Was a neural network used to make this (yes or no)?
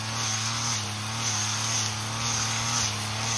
no